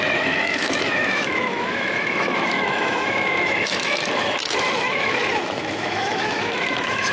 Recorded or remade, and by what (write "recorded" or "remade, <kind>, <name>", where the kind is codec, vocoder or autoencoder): remade, autoencoder, DAC-VAE